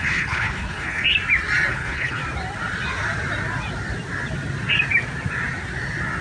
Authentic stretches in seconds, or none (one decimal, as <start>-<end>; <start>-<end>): 1.0-1.7; 2.2-6.2